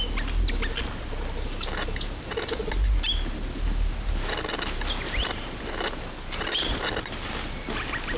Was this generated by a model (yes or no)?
no